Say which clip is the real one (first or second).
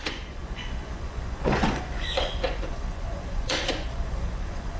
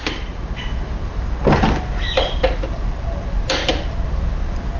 second